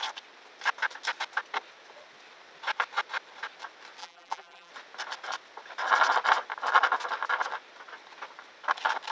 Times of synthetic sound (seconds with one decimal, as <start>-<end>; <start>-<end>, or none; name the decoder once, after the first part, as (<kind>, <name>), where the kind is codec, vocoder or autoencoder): 4.0-4.7 (vocoder, BigVGAN v2)